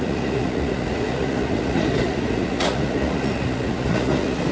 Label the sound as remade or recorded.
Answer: remade